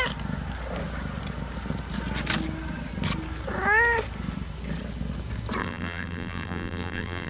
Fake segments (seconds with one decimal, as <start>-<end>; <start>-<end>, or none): 5.6-7.3